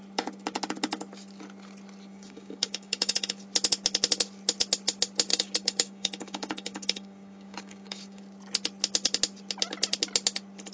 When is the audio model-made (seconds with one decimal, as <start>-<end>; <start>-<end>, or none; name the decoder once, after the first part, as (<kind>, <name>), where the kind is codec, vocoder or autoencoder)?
2.1-3.4 (codec, DAC); 5.3-8.2